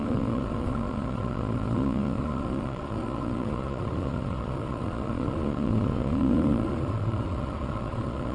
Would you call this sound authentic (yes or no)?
no